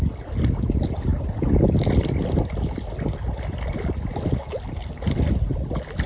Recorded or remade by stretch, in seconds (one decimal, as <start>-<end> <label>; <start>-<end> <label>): 0.0-6.1 recorded